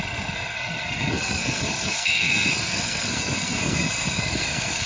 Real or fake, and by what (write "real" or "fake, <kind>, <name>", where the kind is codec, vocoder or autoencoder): fake, codec, SNAC